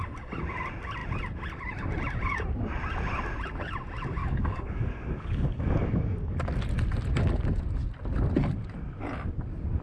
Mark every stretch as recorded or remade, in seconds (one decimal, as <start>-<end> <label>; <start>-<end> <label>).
0.0-4.2 recorded; 4.2-6.5 remade; 6.5-9.8 recorded